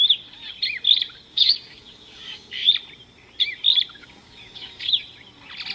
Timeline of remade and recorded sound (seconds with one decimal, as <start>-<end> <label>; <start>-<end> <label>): 0.0-1.3 recorded; 1.3-2.7 remade; 2.7-4.0 recorded; 4.0-4.9 remade; 4.9-5.7 recorded